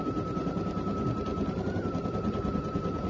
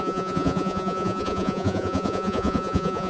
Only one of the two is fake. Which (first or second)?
second